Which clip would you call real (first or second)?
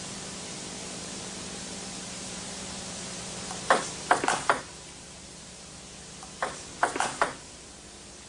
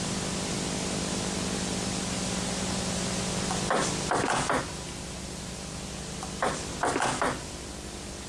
second